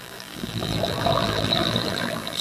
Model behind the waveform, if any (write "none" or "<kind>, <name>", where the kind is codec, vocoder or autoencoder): vocoder, BigVGAN v2